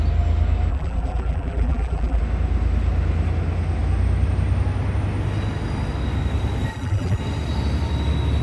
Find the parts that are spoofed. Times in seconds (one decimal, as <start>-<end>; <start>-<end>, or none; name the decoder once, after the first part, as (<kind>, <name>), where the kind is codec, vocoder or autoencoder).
0.7-2.2 (vocoder, BigVGAN v2); 6.7-7.2